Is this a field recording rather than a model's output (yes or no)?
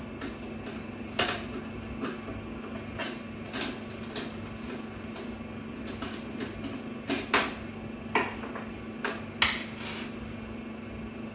yes